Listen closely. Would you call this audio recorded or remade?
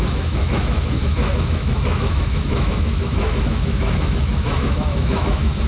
remade